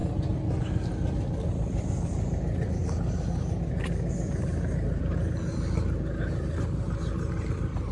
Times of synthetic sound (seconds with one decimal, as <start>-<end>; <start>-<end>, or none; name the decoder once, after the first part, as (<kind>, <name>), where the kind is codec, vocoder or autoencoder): none

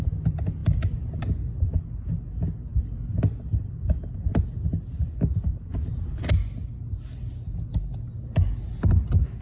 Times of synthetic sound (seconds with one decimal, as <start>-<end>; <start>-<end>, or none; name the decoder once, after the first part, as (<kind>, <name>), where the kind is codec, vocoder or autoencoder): 0.6-1.2 (vocoder, BigVGAN v2)

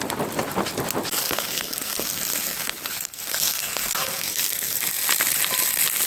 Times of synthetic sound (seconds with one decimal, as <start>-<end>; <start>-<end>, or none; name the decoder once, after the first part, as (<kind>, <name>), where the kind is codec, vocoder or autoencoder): 1.2-4.8 (codec, SNAC)

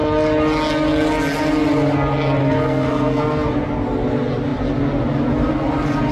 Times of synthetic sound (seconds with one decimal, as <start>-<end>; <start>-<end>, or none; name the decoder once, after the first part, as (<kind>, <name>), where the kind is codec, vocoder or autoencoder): 2.4-3.5 (codec, SNAC)

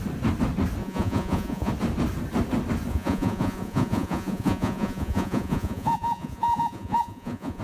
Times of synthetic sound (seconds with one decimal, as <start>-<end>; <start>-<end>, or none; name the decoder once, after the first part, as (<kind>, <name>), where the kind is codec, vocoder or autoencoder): 0.8-1.7 (vocoder, Vocos); 2.9-7.6

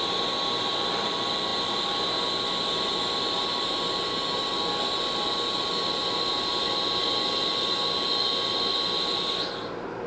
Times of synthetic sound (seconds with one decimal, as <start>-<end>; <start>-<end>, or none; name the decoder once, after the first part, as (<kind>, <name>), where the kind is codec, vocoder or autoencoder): none

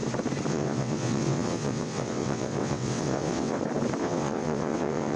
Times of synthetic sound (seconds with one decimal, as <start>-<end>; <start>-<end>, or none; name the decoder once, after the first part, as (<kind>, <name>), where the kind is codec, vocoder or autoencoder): 0.5-3.6 (vocoder, WaveNeXt); 4.0-5.2